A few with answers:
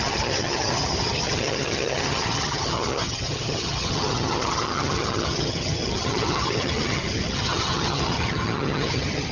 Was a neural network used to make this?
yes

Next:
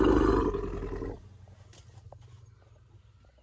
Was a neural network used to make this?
no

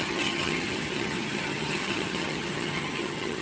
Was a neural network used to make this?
yes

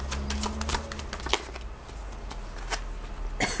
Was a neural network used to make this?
no